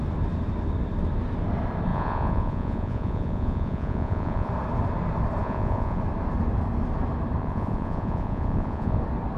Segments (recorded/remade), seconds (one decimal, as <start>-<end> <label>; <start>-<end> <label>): 0.0-1.9 recorded; 1.9-4.5 remade; 4.5-5.4 recorded; 5.4-6.0 remade; 6.0-7.4 recorded; 7.4-9.0 remade; 9.0-9.4 recorded